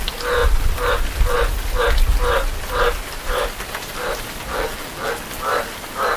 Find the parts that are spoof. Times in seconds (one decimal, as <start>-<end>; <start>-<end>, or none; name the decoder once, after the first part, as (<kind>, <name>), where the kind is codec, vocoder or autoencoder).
4.5-5.1 (vocoder, BigVGAN v2)